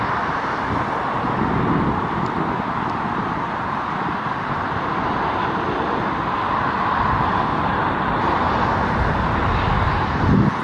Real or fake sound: real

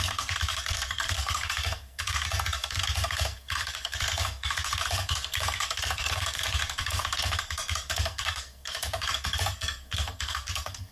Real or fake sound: fake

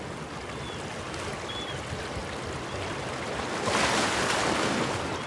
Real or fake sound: real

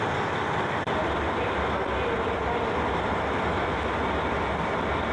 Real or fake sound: real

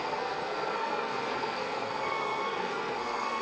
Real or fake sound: fake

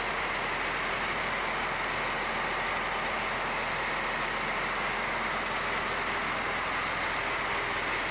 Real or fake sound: real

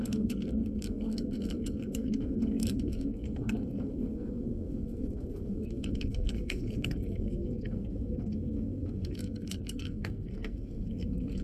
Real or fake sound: fake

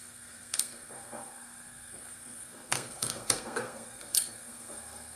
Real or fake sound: fake